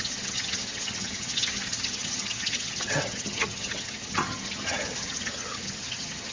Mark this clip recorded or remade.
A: remade